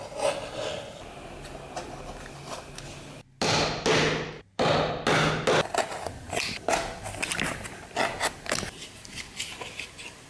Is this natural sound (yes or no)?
yes